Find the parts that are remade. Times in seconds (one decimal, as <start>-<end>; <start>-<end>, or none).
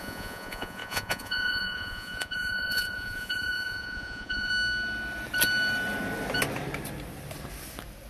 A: 0.0-4.5